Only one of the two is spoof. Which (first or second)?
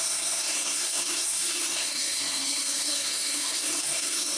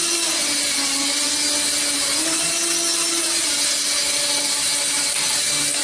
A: first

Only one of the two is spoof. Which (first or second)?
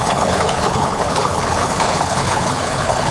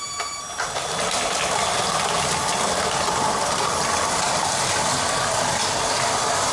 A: first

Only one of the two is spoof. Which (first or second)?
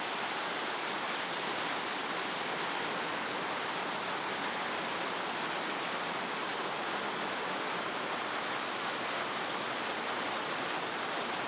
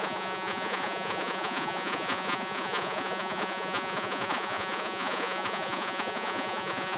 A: second